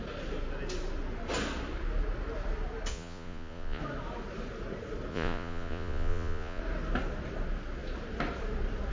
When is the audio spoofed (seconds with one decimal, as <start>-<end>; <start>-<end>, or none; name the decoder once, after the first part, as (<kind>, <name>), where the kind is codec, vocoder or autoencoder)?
2.9-3.8 (vocoder, Vocos); 5.1-6.6